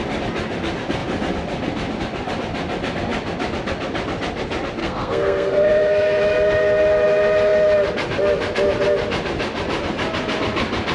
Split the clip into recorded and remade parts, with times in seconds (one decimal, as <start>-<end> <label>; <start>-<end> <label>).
0.0-4.8 recorded; 4.8-6.2 remade; 6.2-10.9 recorded

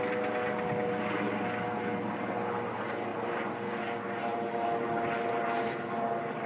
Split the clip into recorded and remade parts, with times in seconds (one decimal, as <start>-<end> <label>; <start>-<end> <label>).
0.0-6.5 recorded

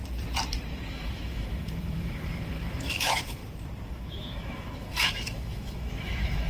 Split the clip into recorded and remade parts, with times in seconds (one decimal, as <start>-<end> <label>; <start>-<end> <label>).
0.0-0.9 recorded; 0.9-3.4 remade; 3.4-3.9 recorded; 3.9-6.5 remade